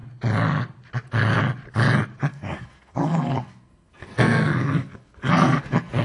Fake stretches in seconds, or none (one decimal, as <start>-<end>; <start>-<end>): 2.3-6.0